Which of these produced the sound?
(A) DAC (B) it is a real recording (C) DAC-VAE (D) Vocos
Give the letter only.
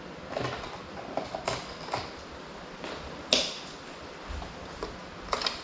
B